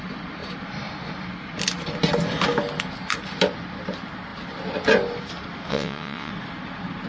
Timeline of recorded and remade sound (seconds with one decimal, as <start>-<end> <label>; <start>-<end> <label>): 0.0-5.7 recorded; 5.7-6.3 remade; 6.3-7.1 recorded